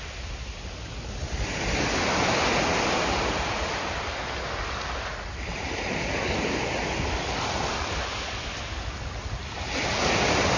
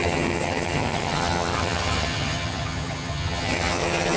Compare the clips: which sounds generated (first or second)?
second